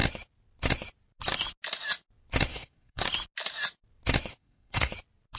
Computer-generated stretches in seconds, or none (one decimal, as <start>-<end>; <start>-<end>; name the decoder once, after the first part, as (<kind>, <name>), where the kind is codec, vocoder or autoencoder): 2.5-3.0 (codec, SNAC); 4.3-4.9